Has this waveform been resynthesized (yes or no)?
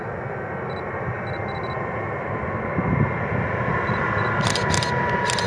no